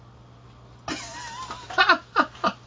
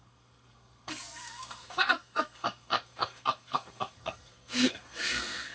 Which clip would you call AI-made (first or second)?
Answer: second